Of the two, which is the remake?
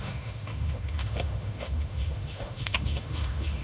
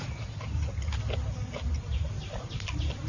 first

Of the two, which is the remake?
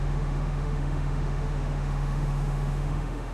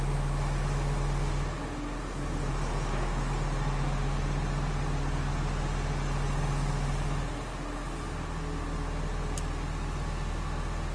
first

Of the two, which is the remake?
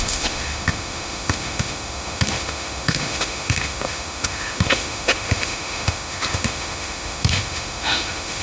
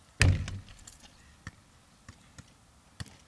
first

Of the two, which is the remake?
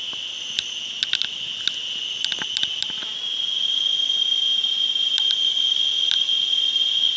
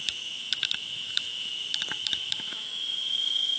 second